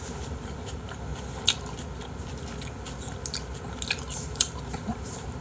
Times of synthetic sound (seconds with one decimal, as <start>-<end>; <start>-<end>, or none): 0.0-1.1; 4.2-5.4